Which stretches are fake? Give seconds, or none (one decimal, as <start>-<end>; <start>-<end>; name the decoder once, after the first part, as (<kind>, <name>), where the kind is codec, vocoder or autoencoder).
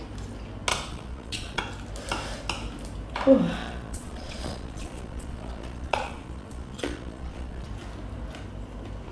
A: 0.7-1.6 (vocoder, Vocos); 3.6-7.7